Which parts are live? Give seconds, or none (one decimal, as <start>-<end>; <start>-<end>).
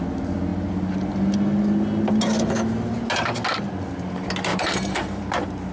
0.0-4.5; 5.2-5.7